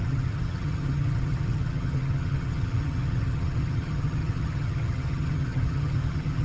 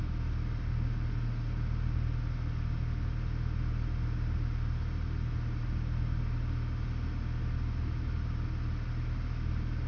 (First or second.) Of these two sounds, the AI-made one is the first